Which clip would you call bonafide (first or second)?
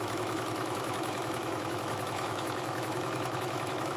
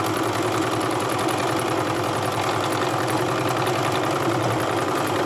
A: second